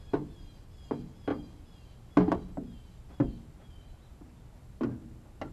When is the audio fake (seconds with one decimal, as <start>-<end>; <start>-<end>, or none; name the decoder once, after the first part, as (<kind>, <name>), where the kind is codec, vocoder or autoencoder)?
none

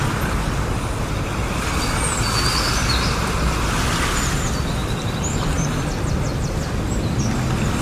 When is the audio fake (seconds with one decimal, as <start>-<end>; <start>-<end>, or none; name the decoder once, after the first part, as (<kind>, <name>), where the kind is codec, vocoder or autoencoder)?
4.8-5.7 (vocoder, BigVGAN v2); 6.3-6.8